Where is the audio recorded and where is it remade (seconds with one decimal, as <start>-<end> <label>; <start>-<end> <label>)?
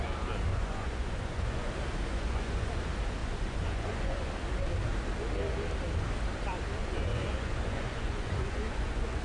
0.0-0.5 recorded; 0.5-1.7 remade; 1.7-2.1 recorded; 2.1-2.7 remade; 2.7-3.2 recorded; 3.2-4.3 remade; 4.3-6.8 recorded; 6.8-9.2 remade